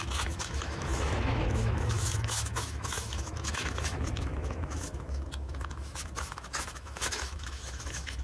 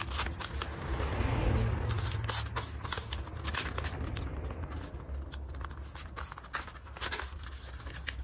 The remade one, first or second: first